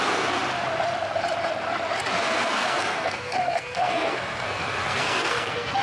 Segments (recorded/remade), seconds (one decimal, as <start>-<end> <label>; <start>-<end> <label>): 0.0-0.4 remade; 0.4-2.2 recorded; 2.2-5.8 remade